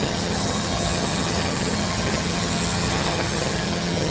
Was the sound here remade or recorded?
remade